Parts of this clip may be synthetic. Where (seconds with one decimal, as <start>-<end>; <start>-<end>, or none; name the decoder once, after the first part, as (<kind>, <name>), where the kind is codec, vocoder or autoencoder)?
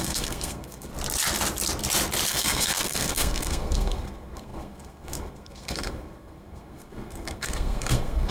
0.0-0.9 (codec, SNAC); 2.3-8.3